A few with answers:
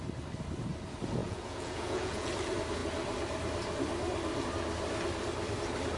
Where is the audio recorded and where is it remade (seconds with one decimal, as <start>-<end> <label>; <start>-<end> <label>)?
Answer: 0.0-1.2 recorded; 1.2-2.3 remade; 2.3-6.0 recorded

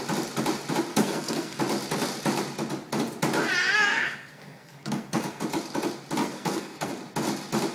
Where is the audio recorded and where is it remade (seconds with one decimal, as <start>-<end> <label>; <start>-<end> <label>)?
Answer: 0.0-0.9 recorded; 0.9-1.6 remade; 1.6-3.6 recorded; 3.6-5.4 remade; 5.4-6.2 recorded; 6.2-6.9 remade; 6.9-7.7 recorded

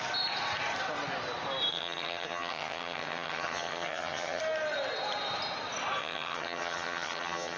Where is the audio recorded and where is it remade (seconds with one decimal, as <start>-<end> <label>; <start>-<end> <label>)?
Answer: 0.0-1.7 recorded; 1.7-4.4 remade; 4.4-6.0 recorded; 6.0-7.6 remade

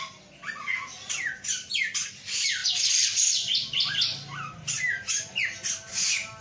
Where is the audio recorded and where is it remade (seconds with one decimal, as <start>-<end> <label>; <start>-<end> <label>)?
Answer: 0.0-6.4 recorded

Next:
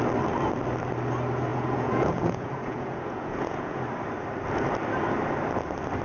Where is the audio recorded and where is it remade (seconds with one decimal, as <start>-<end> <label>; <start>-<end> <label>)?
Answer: 0.0-1.5 recorded; 1.5-3.8 remade; 3.8-6.0 recorded

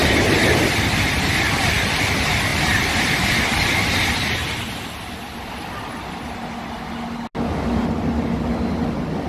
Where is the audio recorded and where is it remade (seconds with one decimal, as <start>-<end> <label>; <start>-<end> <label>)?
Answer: 0.0-9.3 recorded

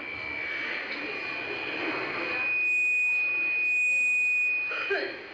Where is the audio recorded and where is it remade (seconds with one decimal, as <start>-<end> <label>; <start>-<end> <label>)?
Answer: 0.0-5.3 recorded

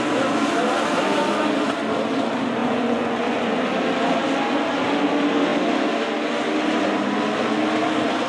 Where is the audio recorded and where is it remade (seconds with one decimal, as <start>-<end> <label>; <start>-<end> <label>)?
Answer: 0.0-2.6 recorded; 2.6-3.6 remade; 3.6-8.3 recorded